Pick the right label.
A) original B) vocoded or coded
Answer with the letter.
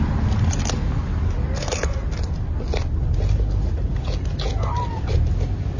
A